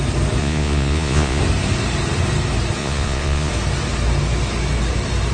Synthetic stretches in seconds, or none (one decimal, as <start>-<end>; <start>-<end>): 0.4-1.4; 2.8-3.5